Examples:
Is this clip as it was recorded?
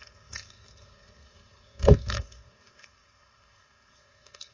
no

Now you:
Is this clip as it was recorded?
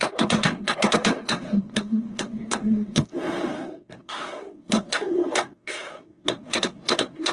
no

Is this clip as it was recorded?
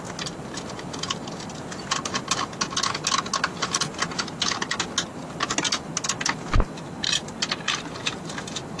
yes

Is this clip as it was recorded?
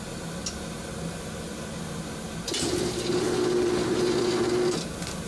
yes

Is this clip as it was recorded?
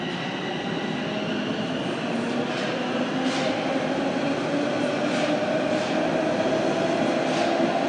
yes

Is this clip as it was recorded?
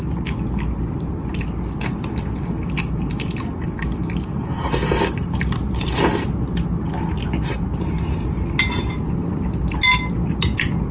yes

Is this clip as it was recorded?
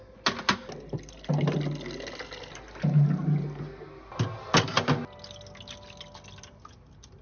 yes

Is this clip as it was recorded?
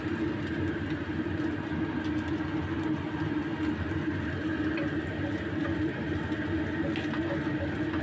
yes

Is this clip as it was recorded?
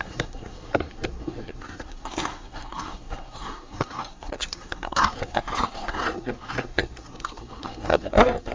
no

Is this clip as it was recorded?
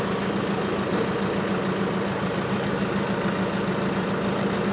yes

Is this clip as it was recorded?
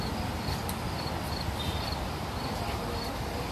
yes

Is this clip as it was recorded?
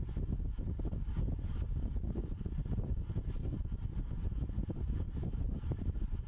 yes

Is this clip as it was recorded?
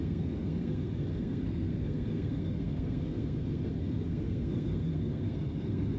no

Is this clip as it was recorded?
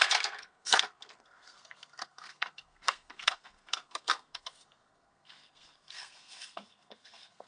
no